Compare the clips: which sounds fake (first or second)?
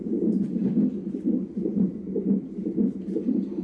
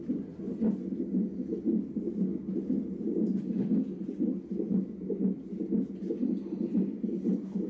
first